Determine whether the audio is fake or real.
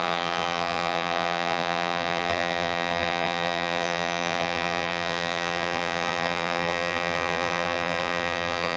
fake